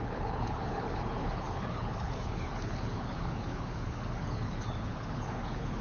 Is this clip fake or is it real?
fake